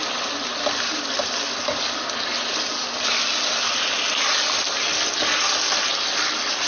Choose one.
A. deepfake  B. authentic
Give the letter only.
B